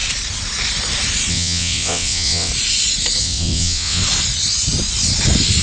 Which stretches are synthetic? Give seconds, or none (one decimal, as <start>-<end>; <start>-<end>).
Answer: 1.3-2.5; 3.2-4.0